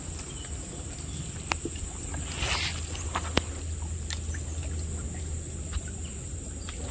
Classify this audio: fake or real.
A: real